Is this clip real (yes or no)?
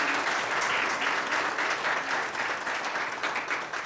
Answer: yes